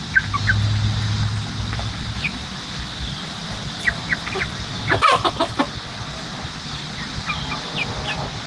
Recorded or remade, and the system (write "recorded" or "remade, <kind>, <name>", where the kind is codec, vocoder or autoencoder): recorded